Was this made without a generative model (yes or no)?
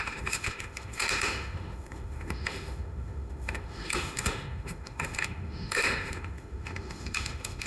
no